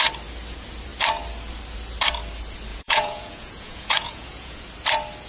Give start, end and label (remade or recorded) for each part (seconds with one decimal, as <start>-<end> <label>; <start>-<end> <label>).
0.0-2.7 recorded; 2.7-4.6 remade; 4.6-5.3 recorded